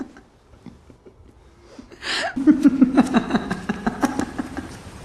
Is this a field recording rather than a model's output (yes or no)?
yes